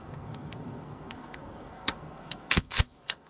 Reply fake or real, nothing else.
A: fake